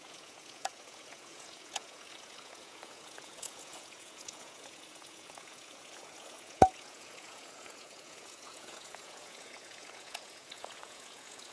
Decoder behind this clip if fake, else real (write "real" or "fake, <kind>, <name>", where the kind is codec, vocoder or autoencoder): fake, vocoder, Vocos